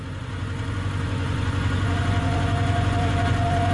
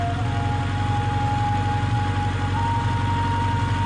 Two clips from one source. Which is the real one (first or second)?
second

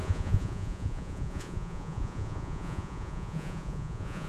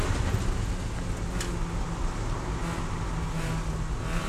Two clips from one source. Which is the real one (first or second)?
second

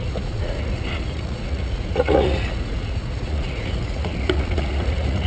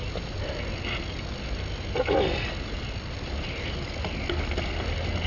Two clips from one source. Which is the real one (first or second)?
second